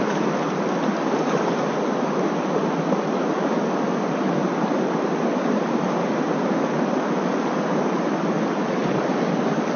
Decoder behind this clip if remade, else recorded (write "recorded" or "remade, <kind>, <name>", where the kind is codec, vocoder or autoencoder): recorded